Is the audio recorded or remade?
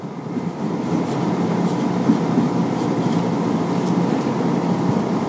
remade